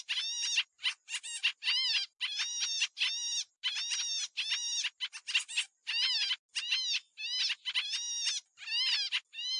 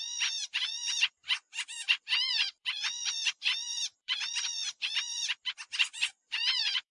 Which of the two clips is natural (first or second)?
first